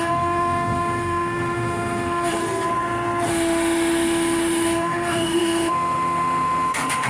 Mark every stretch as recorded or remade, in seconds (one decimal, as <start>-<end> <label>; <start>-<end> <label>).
0.0-2.4 remade; 2.4-3.3 recorded; 3.3-7.1 remade